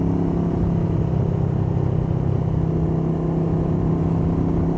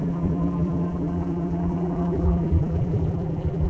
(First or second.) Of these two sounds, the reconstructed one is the second